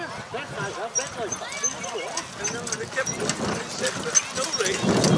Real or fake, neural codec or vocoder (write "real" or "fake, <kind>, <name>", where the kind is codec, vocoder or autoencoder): real